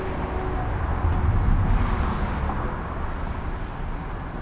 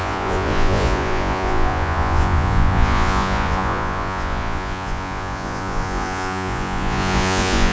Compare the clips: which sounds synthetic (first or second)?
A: second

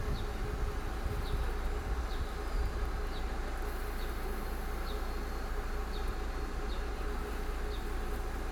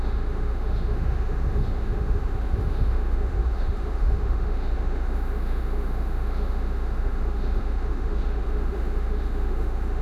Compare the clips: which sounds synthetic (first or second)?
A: second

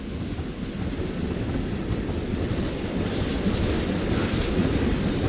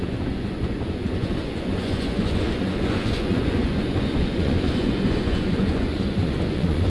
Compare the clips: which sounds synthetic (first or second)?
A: second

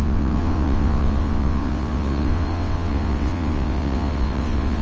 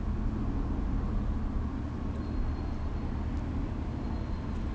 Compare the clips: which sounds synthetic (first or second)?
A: first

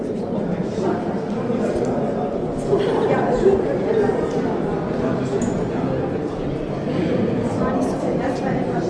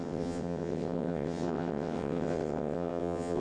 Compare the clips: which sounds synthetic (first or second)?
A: second